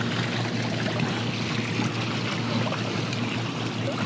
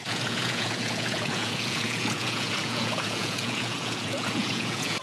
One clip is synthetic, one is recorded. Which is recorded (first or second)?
first